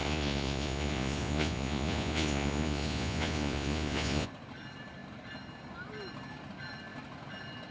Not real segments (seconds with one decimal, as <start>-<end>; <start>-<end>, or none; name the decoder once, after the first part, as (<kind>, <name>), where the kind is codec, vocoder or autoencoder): 0.0-4.3 (vocoder, Vocos)